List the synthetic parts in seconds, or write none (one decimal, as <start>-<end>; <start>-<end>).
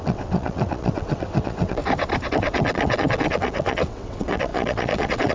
0.0-1.8; 2.3-5.3